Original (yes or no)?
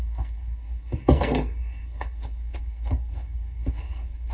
no